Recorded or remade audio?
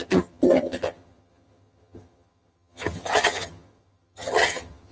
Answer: remade